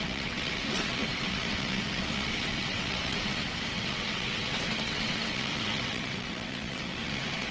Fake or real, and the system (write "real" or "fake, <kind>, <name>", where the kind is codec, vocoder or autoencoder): fake, vocoder, WaveNeXt